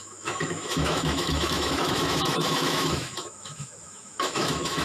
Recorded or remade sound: remade